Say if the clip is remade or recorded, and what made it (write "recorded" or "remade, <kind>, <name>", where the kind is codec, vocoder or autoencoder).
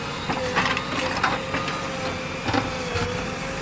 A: recorded